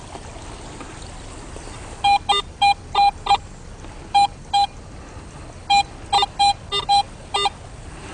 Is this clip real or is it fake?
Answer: real